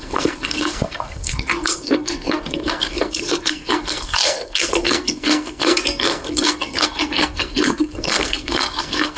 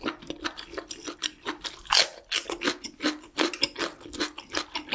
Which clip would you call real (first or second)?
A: second